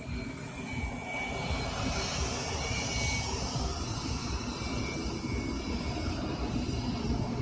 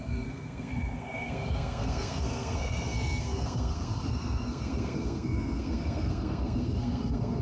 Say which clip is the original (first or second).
first